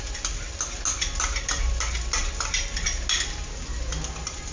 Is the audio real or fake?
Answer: real